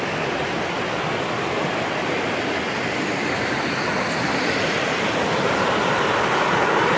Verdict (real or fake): real